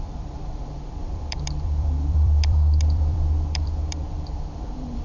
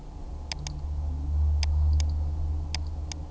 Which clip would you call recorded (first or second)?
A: second